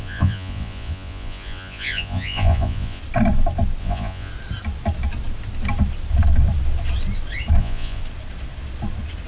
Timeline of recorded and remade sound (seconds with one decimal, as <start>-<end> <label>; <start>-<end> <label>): 0.0-3.0 remade; 3.0-3.8 recorded; 3.8-4.3 remade; 4.3-7.6 recorded; 7.6-8.0 remade; 8.0-9.3 recorded